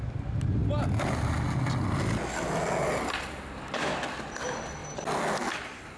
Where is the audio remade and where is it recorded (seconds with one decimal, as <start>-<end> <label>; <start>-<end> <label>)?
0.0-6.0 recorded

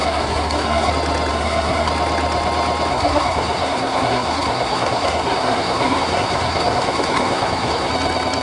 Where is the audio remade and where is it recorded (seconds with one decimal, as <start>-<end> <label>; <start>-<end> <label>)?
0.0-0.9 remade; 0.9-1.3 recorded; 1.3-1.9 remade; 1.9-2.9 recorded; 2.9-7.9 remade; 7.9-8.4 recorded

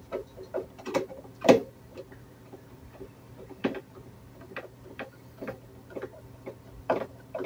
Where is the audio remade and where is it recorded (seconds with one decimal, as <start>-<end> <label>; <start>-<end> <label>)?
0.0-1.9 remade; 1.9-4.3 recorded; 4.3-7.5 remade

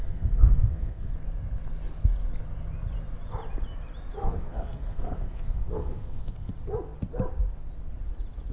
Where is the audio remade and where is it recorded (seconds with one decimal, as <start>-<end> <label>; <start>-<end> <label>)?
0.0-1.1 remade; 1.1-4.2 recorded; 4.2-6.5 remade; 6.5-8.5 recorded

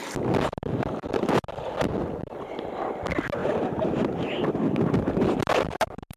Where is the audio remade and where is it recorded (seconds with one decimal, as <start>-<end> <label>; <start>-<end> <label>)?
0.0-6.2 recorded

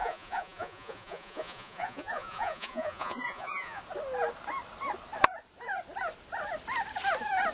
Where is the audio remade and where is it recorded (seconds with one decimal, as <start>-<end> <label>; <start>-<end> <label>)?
0.0-3.8 remade; 3.8-7.5 recorded

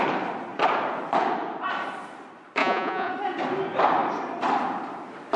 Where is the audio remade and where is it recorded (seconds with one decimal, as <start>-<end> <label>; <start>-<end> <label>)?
0.0-2.6 recorded; 2.6-3.1 remade; 3.1-5.4 recorded

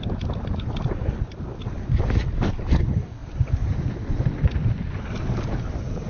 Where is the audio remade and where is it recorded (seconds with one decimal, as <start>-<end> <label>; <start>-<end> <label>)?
0.0-3.2 recorded; 3.2-4.7 remade; 4.7-6.1 recorded